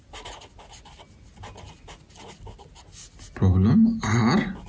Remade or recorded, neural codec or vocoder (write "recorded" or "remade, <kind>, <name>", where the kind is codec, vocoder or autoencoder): recorded